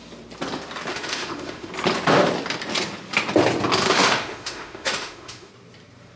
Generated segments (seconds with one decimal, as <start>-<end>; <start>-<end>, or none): 0.9-1.7; 3.8-5.5